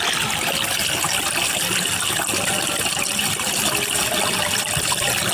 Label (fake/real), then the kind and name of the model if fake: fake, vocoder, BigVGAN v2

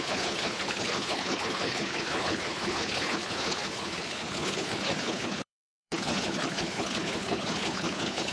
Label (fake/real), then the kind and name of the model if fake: fake, codec, HILCodec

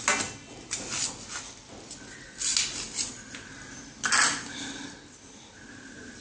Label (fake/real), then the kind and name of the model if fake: real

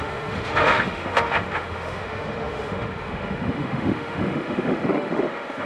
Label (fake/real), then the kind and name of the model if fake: fake, autoencoder, DAC-VAE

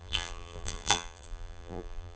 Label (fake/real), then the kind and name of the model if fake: fake, vocoder, BigVGAN v2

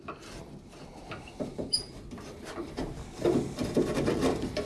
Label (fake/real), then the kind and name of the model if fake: fake, vocoder, BigVGAN v2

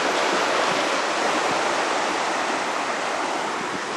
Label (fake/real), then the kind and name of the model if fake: real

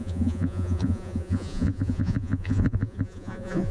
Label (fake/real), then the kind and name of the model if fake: fake, vocoder, Vocos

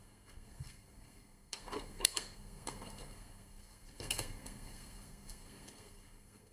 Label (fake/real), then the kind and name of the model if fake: fake, codec, SNAC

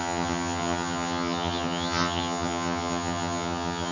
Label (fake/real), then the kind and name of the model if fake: fake, vocoder, HiFi-GAN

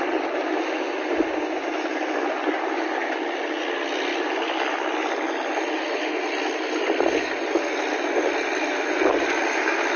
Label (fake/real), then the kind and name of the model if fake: real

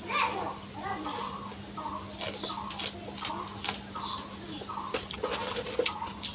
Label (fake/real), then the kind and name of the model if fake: real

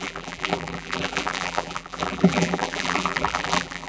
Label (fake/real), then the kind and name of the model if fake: fake, vocoder, BigVGAN v2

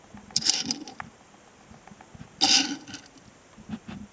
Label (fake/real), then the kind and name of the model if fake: real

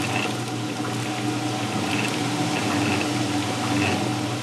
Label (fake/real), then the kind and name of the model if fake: real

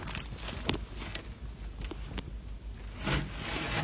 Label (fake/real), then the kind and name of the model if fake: real